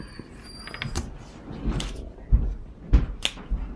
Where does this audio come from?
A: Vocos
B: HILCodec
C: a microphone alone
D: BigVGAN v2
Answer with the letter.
C